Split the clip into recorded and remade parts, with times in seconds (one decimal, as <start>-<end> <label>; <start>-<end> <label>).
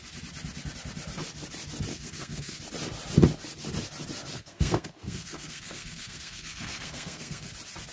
0.0-1.9 recorded; 1.9-2.6 remade; 2.6-4.3 recorded; 4.3-7.5 remade; 7.5-7.9 recorded